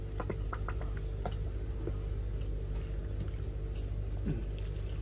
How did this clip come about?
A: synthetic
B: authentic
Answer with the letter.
B